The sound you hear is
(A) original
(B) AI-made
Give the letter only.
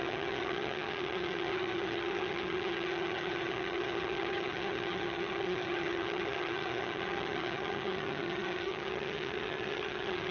B